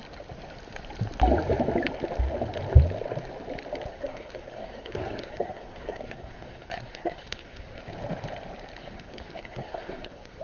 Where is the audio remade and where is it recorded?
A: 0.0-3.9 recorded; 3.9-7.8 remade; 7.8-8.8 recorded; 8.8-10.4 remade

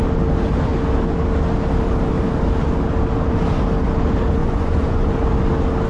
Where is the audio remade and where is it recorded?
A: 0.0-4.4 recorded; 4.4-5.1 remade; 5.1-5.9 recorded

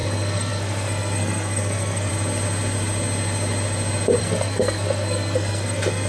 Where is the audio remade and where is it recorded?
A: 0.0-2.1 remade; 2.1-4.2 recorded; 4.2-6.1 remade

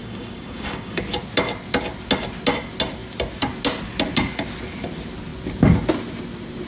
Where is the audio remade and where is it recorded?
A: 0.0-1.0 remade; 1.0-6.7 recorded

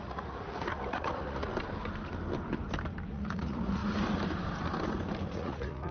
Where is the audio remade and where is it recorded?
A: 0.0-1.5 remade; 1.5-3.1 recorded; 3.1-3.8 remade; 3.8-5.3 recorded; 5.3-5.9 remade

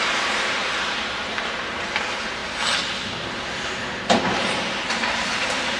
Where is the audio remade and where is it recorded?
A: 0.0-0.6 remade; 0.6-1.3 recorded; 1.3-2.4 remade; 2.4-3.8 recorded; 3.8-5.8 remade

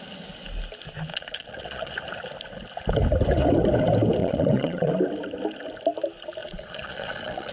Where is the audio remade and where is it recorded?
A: 0.0-1.1 recorded; 1.1-2.0 remade; 2.0-4.2 recorded; 4.2-4.9 remade; 4.9-6.4 recorded; 6.4-7.5 remade

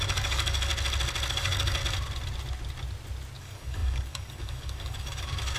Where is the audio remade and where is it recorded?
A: 0.0-0.7 remade; 0.7-1.3 recorded; 1.3-1.8 remade; 1.8-3.4 recorded; 3.4-5.6 remade